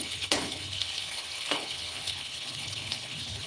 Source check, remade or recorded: remade